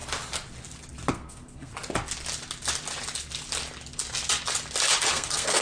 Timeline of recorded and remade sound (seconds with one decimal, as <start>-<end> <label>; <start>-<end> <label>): 0.0-1.1 recorded; 1.1-1.7 remade; 1.7-5.1 recorded; 5.1-5.6 remade